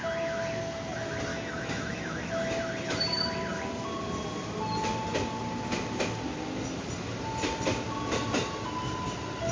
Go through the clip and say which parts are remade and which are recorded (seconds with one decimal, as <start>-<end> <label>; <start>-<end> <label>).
0.0-1.3 recorded; 1.3-2.3 remade; 2.3-9.5 recorded